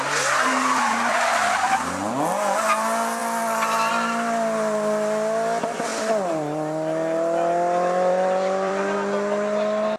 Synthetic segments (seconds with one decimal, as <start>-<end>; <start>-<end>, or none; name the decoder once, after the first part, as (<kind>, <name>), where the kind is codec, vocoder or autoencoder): 5.9-8.8 (vocoder, BigVGAN v2)